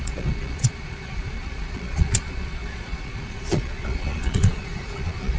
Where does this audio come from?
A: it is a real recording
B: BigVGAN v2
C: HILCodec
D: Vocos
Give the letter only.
D